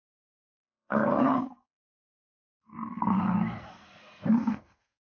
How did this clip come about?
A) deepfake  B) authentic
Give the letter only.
A